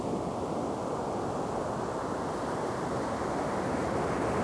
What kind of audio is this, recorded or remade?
recorded